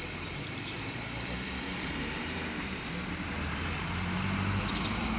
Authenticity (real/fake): fake